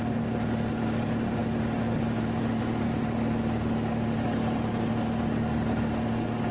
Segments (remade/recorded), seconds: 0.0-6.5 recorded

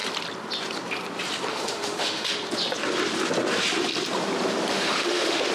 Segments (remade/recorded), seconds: 0.0-1.5 recorded; 1.5-2.3 remade; 2.3-4.7 recorded; 4.7-5.5 remade

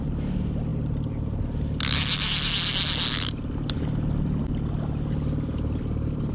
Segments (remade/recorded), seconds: 0.0-6.3 recorded

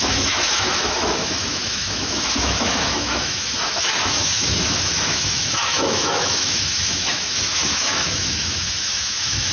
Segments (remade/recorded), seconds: 0.0-9.5 remade

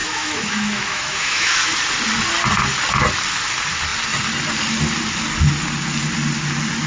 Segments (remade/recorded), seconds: 0.0-1.7 remade; 1.7-6.9 recorded